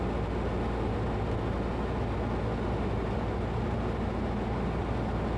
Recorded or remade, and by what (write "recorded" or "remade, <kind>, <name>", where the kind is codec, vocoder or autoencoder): recorded